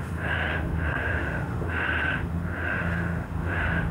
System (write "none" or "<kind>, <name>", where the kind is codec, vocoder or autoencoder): autoencoder, DAC-VAE